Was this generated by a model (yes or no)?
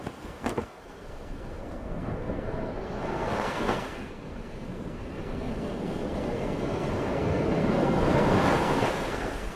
yes